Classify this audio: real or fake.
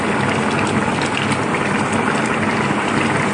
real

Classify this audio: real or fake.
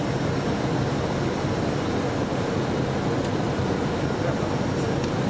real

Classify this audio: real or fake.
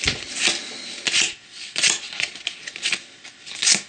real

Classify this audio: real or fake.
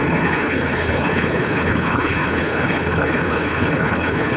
fake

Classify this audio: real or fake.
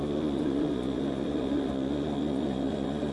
fake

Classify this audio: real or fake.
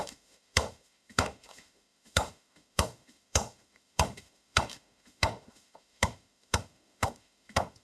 fake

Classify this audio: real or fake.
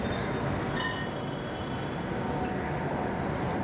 real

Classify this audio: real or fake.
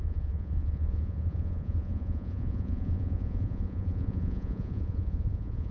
fake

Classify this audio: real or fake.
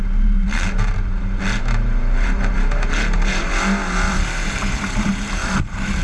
fake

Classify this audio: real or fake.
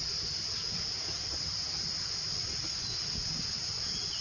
real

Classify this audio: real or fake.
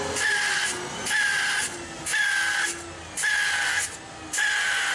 real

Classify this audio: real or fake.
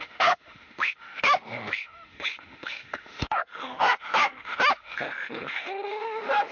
fake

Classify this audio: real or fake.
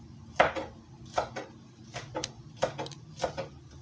real